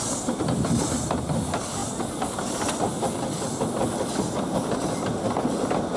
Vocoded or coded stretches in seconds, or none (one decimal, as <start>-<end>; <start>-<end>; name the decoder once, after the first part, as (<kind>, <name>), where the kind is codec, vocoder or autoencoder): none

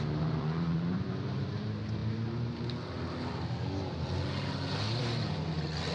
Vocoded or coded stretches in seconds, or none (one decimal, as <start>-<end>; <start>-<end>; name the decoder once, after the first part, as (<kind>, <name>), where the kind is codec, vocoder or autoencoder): 0.4-1.1 (vocoder, Vocos)

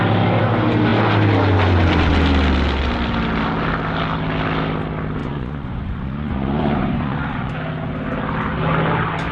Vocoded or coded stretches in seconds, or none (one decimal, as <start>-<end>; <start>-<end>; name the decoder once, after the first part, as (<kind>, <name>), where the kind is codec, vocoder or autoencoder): 5.2-7.5 (vocoder, Vocos)

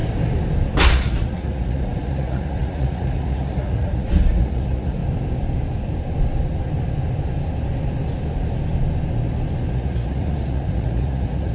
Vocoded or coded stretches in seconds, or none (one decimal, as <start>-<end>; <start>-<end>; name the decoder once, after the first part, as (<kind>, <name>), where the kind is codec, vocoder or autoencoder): 0.8-5.0 (vocoder, Vocos); 9.7-11.5

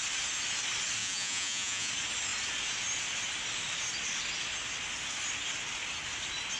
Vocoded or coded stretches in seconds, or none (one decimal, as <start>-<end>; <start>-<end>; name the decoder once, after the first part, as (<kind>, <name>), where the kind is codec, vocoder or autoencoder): 1.0-1.9 (vocoder, Vocos)

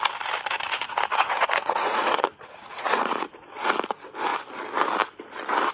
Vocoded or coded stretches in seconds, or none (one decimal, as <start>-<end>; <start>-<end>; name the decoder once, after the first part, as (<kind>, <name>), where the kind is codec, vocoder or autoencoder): 1.1-3.3 (vocoder, Vocos)

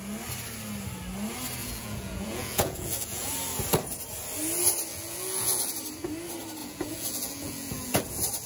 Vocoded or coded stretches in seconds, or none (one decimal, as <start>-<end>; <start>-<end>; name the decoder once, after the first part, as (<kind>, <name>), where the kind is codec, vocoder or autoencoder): 1.6-3.3 (vocoder, Vocos); 4.9-5.7; 6.6-8.0